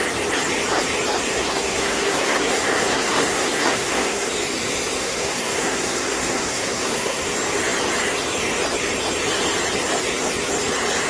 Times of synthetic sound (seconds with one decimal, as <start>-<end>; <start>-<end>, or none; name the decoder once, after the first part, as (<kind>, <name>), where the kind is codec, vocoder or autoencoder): 1.3-4.3 (codec, SNAC); 5.0-7.3